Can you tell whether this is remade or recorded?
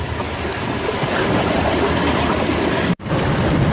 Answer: recorded